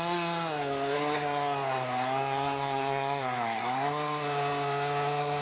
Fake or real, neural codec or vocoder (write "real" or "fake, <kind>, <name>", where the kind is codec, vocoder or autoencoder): fake, codec, SNAC